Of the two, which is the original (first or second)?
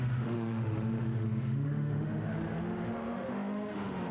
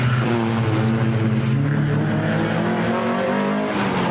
second